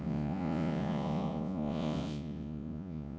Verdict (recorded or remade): remade